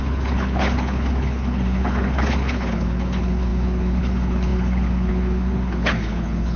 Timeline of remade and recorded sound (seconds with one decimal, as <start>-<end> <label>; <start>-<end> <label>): 0.0-6.6 remade